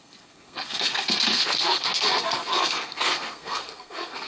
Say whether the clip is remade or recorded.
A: remade